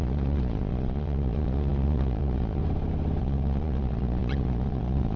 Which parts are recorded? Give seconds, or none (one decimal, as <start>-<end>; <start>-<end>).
2.6-3.2